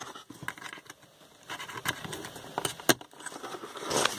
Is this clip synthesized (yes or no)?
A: no